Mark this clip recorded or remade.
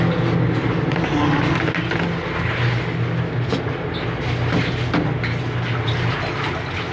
recorded